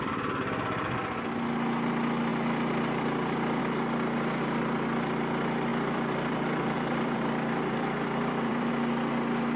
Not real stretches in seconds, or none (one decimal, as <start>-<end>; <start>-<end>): 5.7-8.7